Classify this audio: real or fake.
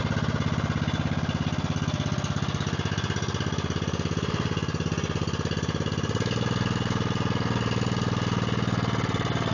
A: real